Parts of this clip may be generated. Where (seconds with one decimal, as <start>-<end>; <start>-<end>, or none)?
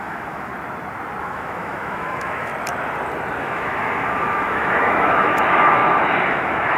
0.0-0.5; 1.2-2.5; 3.4-5.8; 6.3-6.8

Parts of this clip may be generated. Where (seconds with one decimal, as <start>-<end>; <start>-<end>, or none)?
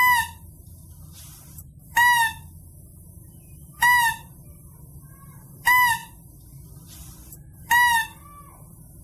none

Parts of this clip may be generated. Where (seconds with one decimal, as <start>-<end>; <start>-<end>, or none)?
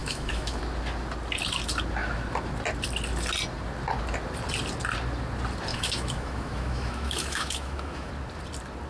0.0-0.6; 5.7-8.1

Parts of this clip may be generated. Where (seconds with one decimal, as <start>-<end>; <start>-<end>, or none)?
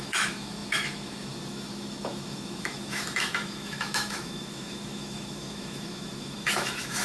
0.0-7.0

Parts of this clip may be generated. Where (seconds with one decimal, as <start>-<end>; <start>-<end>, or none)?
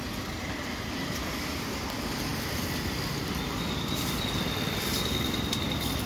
none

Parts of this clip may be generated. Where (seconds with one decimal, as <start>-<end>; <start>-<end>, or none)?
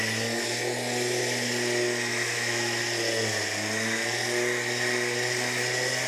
2.1-2.8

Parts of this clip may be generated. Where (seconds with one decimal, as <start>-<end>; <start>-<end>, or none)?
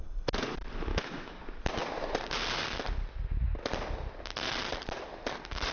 0.9-1.4